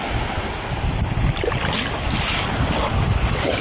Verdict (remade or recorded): recorded